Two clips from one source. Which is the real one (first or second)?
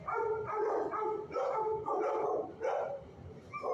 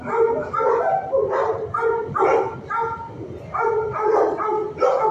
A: second